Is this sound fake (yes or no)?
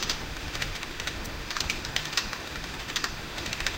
yes